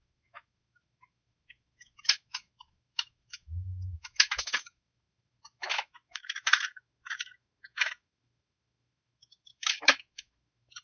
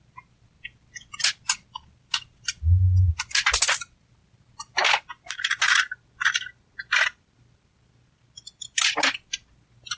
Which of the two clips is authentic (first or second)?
second